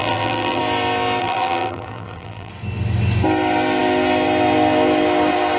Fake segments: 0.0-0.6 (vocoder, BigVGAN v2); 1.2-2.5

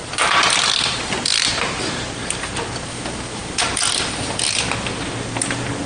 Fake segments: none

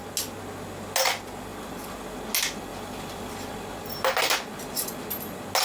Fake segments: 1.5-2.1 (vocoder, BigVGAN v2); 2.7-3.5

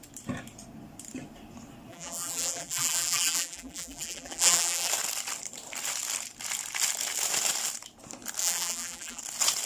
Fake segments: 1.9-4.9 (vocoder, BigVGAN v2); 8.4-9.2

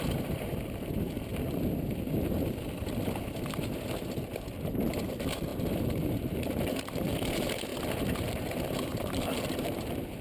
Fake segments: 0.0-1.3 (vocoder, BigVGAN v2); 5.0-7.7; 8.2-10.2